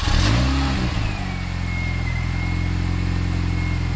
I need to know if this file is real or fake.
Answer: real